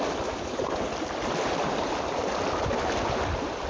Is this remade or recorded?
recorded